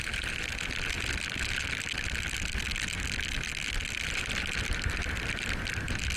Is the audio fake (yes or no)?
no